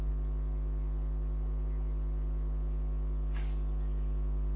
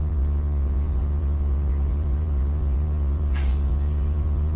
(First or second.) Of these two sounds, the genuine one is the first